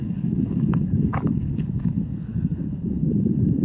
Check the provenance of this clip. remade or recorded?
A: remade